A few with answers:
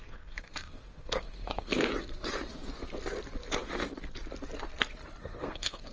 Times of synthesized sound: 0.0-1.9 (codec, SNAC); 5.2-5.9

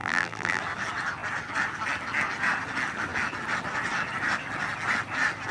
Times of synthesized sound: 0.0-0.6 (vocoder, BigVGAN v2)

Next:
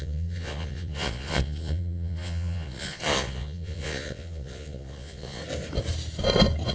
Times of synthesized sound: 0.0-5.4 (vocoder, Vocos)